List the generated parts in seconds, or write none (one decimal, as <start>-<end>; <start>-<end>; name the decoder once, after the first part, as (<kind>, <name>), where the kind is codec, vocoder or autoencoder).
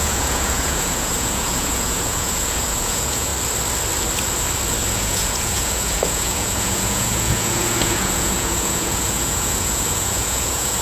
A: 0.0-3.3 (vocoder, Vocos); 4.8-10.8